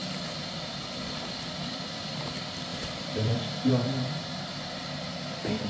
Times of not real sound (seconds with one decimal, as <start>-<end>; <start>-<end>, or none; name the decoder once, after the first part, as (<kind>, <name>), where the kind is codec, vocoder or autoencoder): 1.6-2.2 (vocoder, BigVGAN v2); 2.7-3.7

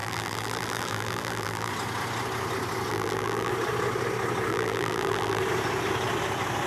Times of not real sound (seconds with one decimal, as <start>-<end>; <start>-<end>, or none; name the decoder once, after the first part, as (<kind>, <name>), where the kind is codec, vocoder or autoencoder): 0.0-1.7 (vocoder, BigVGAN v2); 2.9-3.5; 4.5-5.4

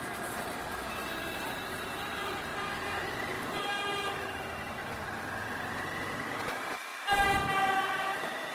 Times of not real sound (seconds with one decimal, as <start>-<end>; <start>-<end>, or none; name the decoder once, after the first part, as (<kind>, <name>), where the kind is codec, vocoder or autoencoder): 0.0-1.0 (vocoder, BigVGAN v2); 1.8-2.5; 3.1-4.8; 6.4-6.9; 7.8-8.5

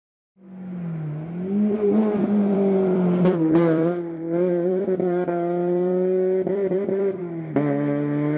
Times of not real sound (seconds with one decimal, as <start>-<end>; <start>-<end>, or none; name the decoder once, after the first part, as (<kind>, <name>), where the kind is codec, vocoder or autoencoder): 2.5-7.2 (vocoder, BigVGAN v2)

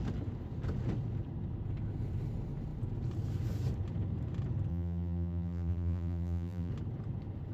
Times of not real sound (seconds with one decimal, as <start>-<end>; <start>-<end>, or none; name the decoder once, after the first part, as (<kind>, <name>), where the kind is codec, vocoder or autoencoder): 4.7-6.7 (vocoder, BigVGAN v2)

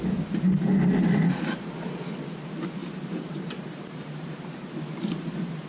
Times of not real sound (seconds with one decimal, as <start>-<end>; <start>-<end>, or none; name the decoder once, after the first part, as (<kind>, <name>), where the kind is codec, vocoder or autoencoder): 2.8-4.7 (vocoder, BigVGAN v2)